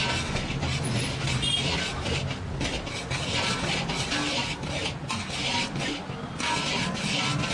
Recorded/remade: recorded